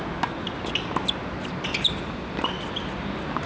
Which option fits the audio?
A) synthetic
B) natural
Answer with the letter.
B